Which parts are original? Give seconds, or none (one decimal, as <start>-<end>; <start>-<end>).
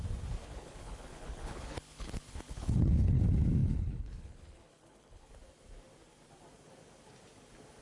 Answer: 0.0-0.4; 3.2-3.6; 5.3-7.8